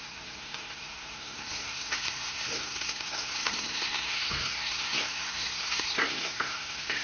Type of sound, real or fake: fake